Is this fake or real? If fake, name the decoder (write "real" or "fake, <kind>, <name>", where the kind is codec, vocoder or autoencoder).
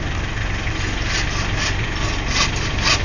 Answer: real